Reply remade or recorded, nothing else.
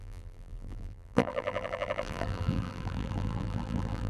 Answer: remade